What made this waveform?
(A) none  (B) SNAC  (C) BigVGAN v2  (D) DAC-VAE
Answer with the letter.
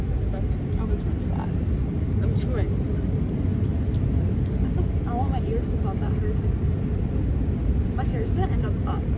A